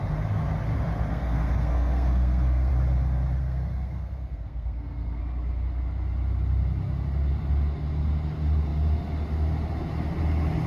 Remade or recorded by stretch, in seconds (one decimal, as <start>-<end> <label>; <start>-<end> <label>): 0.0-1.1 recorded; 1.1-2.7 remade; 2.7-3.4 recorded; 3.4-5.2 remade; 5.2-10.7 recorded